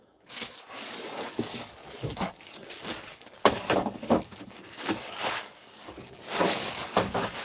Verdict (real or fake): fake